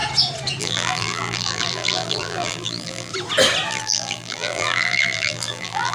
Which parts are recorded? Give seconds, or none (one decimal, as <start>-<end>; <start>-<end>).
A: 0.0-0.6; 3.1-3.7

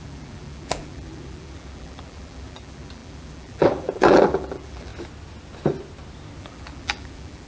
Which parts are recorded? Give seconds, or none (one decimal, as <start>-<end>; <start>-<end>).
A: 4.9-6.4

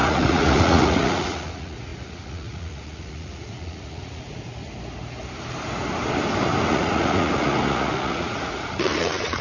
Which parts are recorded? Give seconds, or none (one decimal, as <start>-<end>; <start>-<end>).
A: 4.6-6.7

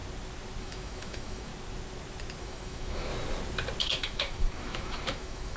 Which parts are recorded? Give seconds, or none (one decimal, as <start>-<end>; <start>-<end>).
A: 0.0-0.6; 1.5-2.4; 3.1-3.8